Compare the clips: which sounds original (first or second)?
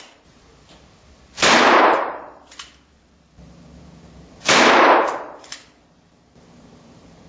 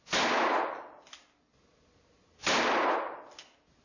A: second